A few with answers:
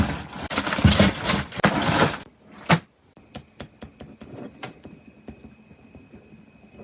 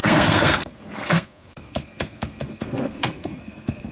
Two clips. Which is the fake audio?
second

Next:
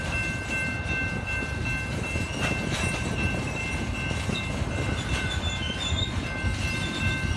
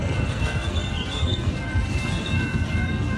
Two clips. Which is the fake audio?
second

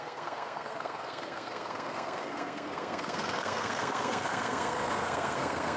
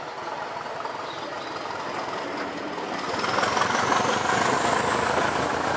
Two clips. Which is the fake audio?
first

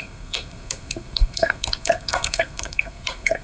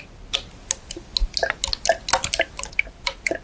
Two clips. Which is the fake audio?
first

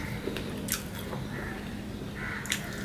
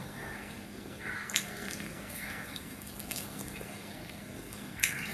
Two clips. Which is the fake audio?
second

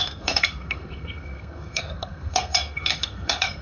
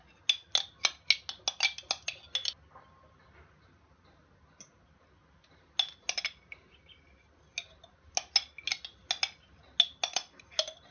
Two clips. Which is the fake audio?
first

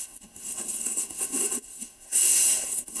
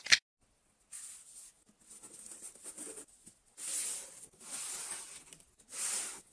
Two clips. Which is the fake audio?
first